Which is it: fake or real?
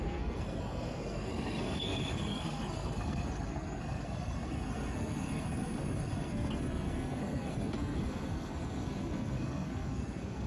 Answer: fake